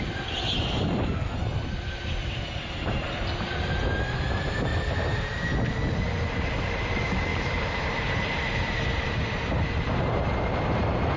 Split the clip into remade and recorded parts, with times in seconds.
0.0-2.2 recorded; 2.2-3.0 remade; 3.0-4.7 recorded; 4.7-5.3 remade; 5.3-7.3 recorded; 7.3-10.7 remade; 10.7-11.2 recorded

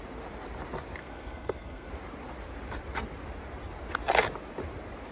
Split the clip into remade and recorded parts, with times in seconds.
0.0-1.0 recorded; 1.0-1.9 remade; 1.9-5.1 recorded

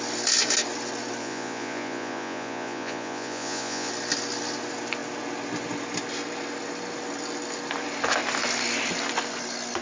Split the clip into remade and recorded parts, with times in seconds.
0.0-1.2 recorded; 1.2-3.9 remade; 3.9-9.8 recorded

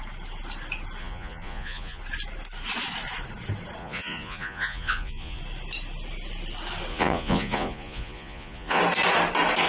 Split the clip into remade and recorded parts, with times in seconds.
0.0-1.0 recorded; 1.0-2.0 remade; 2.0-3.8 recorded; 3.8-5.4 remade; 5.4-6.9 recorded; 6.9-8.8 remade; 8.8-9.7 recorded

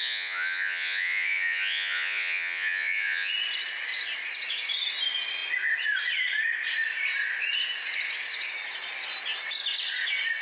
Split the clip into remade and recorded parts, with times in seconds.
0.0-3.3 remade; 3.3-10.4 recorded